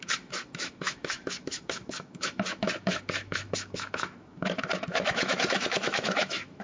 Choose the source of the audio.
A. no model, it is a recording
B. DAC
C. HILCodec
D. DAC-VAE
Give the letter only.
D